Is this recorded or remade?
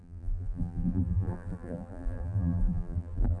remade